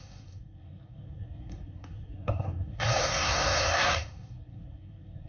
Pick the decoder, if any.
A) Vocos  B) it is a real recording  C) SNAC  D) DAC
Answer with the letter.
C